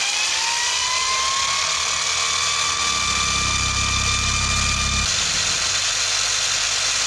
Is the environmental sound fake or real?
real